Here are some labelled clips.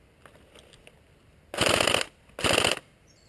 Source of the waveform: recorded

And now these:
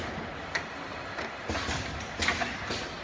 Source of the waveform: recorded